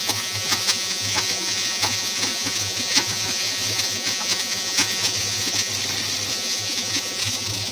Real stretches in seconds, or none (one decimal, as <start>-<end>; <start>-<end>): 5.7-6.3